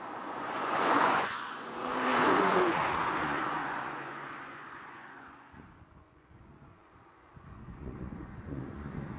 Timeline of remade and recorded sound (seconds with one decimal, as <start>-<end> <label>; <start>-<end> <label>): 0.0-9.2 remade